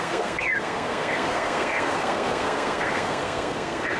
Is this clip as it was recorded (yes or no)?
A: no